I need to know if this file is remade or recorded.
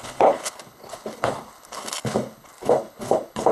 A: remade